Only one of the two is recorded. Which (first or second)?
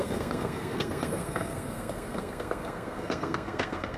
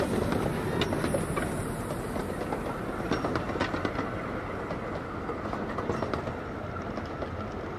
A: second